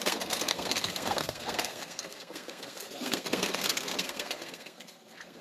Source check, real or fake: fake